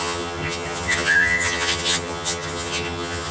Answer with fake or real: fake